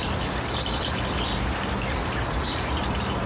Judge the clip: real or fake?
real